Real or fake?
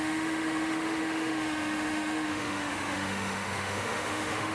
fake